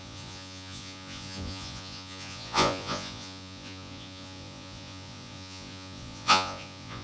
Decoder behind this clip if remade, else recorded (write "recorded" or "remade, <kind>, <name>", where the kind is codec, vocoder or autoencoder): remade, vocoder, Vocos